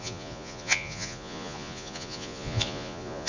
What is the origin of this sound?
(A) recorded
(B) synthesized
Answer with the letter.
B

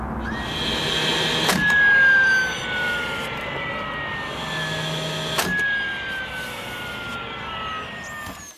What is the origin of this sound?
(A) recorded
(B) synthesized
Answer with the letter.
A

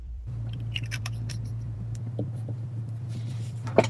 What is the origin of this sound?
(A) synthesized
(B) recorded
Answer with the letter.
A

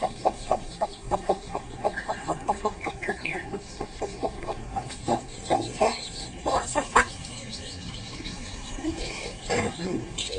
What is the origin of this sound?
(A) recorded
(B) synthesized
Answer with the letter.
B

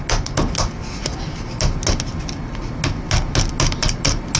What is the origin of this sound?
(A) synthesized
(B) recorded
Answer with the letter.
B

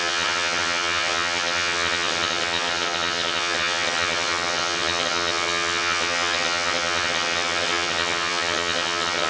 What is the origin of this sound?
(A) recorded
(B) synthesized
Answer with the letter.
B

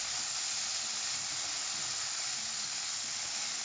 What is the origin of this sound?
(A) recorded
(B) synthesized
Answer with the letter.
A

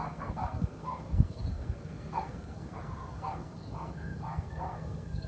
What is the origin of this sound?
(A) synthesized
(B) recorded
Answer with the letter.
A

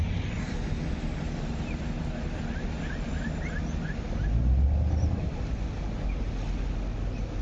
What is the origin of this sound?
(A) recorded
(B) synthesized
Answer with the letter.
A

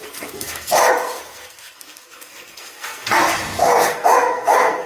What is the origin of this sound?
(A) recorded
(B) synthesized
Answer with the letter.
B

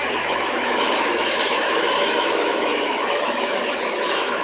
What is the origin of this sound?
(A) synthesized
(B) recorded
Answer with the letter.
A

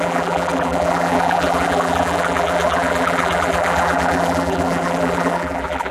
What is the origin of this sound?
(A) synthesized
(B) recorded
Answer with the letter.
A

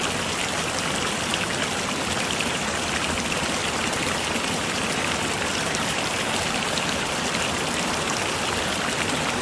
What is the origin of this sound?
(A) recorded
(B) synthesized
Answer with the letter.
B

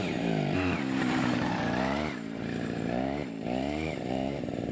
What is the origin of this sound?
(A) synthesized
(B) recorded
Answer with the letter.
A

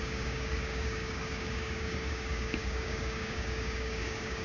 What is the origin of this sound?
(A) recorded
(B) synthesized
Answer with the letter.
B